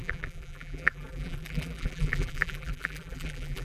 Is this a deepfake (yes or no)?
yes